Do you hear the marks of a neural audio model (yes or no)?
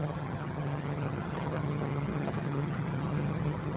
yes